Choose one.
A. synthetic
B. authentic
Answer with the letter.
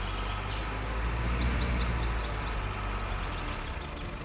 B